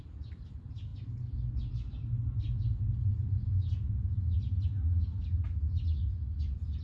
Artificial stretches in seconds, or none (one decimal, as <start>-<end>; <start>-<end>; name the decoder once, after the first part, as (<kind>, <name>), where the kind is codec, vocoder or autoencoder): none